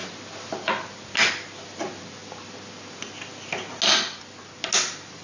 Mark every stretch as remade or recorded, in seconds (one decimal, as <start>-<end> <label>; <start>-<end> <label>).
0.0-5.2 recorded